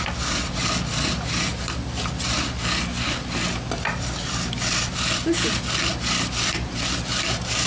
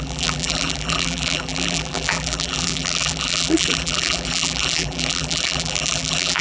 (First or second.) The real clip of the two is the first